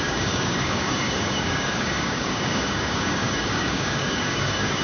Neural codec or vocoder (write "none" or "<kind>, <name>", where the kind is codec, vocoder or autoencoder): codec, DAC